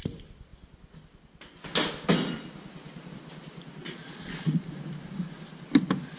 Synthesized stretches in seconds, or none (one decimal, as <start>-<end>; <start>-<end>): 3.8-4.7